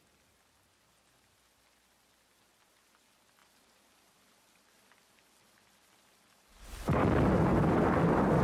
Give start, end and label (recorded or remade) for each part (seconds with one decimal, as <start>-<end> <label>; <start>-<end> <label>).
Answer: 0.0-3.4 recorded; 3.4-7.0 remade; 7.0-7.5 recorded; 7.5-8.4 remade